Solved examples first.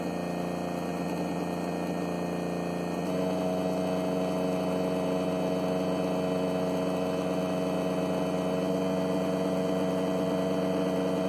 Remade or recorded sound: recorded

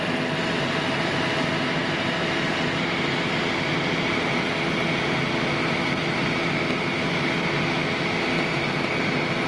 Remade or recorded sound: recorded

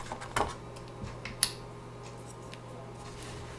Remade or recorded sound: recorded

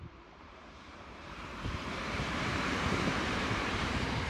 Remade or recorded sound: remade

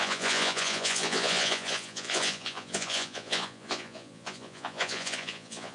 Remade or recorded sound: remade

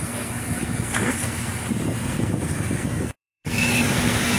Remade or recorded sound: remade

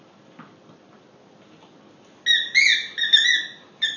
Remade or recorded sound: recorded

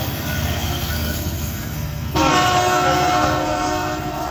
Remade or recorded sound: remade